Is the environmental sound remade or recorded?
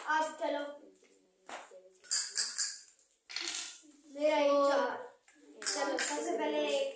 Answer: recorded